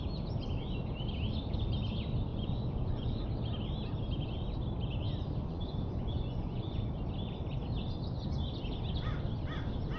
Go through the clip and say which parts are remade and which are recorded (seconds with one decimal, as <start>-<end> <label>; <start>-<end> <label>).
0.0-2.3 recorded; 2.3-3.2 remade; 3.2-5.4 recorded; 5.4-6.9 remade; 6.9-10.0 recorded